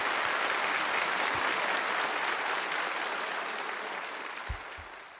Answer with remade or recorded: recorded